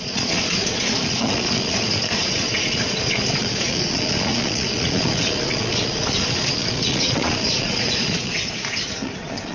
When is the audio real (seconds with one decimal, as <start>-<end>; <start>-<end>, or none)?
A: none